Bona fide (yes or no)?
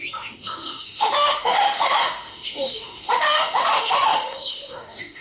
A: no